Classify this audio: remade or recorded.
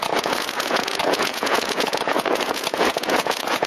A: remade